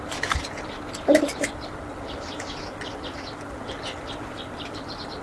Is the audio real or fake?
real